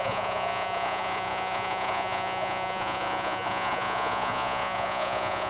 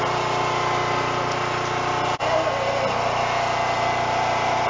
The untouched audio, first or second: second